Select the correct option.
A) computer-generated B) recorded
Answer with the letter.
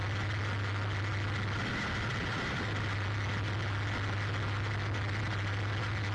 B